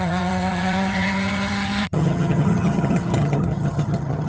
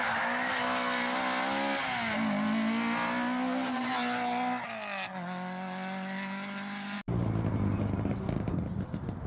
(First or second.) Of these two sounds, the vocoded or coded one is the first